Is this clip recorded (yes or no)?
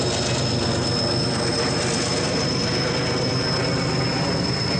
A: yes